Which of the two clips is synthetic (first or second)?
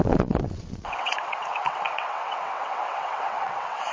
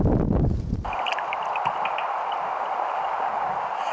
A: first